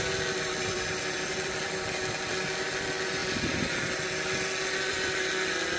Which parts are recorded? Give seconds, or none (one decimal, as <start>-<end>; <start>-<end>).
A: 3.2-4.9